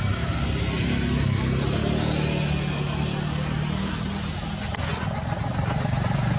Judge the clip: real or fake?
real